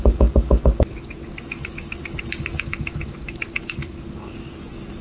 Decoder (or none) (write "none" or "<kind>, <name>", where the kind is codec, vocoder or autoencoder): codec, DAC